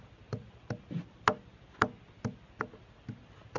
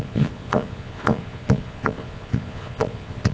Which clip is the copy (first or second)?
second